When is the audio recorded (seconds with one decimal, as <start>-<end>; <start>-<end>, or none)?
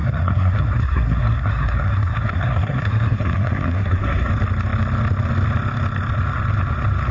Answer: 4.3-7.1